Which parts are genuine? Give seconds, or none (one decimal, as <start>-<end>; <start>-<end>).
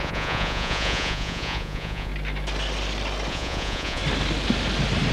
2.1-3.3; 4.0-5.1